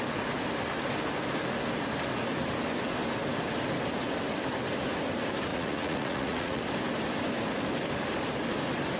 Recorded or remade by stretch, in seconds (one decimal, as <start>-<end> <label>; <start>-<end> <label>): 0.0-5.5 recorded; 5.5-6.6 remade; 6.6-9.0 recorded